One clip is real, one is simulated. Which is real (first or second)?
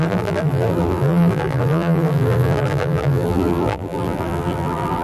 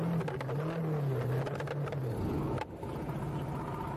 second